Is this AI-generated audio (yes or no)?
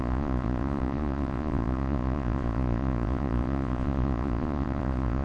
yes